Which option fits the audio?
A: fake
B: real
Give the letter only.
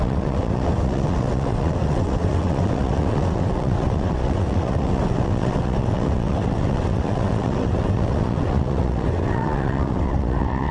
A